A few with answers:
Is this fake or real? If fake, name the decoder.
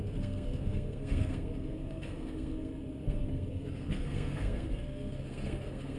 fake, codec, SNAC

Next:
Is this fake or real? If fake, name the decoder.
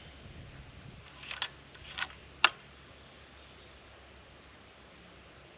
real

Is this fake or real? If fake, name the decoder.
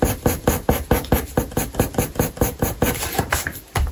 real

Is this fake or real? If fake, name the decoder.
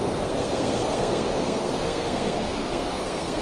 fake, codec, SNAC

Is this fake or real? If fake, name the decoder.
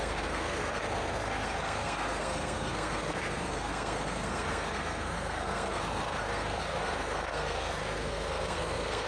fake, codec, SNAC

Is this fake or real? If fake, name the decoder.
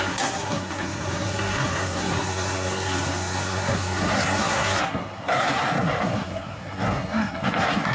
fake, codec, SNAC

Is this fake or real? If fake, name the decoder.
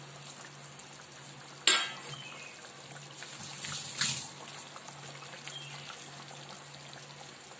real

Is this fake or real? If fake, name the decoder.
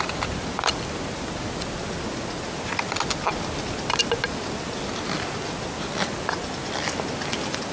real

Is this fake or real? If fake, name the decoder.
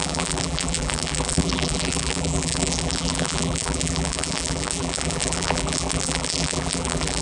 fake, vocoder, BigVGAN v2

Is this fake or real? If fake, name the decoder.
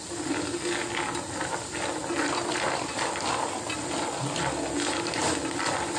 real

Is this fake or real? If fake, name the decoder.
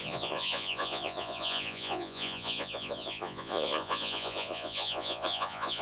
fake, vocoder, Vocos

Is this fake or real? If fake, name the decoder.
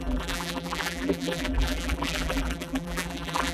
fake, vocoder, BigVGAN v2